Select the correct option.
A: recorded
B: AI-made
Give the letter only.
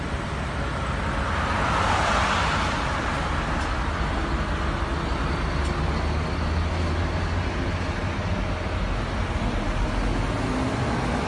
A